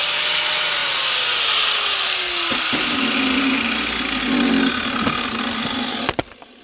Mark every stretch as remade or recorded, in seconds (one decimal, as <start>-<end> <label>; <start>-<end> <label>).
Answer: 0.0-6.6 recorded